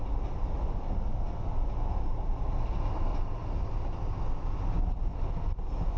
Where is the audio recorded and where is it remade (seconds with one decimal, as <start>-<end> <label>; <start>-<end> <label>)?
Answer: 0.0-3.1 recorded; 3.1-3.9 remade; 3.9-6.0 recorded